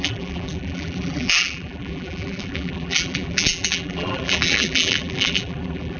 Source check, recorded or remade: remade